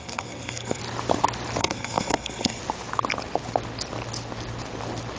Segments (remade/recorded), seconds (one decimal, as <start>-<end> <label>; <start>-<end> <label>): 0.0-0.8 remade; 0.8-1.6 recorded; 1.6-2.6 remade; 2.6-5.2 recorded